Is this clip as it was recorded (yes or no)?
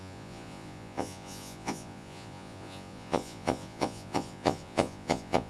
no